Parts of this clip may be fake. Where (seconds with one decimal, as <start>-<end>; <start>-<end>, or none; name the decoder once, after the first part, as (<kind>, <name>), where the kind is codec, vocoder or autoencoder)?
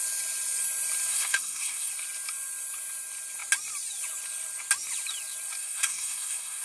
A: 1.1-1.9 (codec, SNAC); 5.6-6.6